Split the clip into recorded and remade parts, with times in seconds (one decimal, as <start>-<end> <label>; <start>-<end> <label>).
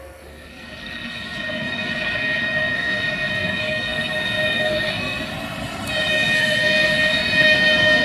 0.0-5.3 remade; 5.3-6.1 recorded; 6.1-8.0 remade